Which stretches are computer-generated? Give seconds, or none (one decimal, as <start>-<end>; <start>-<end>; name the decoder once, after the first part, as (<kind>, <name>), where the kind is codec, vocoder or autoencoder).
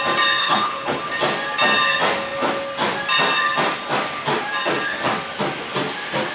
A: 0.4-1.0 (codec, HILCodec)